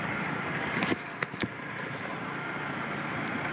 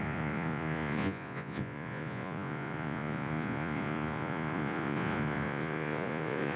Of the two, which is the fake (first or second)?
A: second